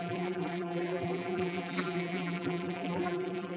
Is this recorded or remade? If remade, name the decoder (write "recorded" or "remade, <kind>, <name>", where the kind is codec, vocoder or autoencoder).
remade, vocoder, BigVGAN v2